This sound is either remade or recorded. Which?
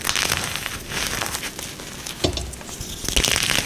recorded